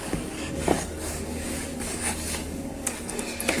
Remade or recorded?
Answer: remade